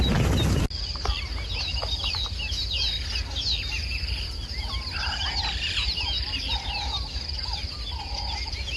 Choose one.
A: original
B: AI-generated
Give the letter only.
A